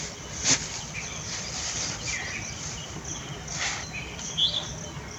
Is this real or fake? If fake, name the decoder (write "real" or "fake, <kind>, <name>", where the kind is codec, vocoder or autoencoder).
real